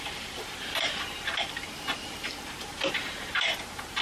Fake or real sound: fake